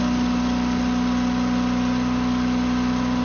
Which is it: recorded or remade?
recorded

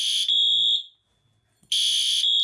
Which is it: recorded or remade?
recorded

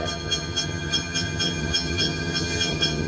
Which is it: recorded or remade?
remade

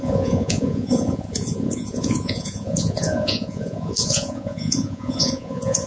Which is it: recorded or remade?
remade